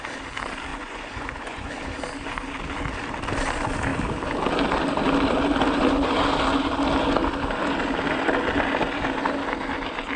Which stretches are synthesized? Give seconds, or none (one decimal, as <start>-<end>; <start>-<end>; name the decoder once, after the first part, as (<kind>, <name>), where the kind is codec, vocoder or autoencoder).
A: 0.7-1.7 (vocoder, Vocos)